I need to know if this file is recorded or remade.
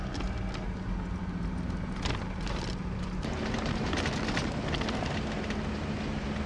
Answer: recorded